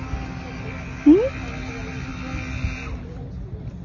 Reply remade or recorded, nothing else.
recorded